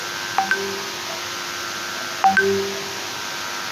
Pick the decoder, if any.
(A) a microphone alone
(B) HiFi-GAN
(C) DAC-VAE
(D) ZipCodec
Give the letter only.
A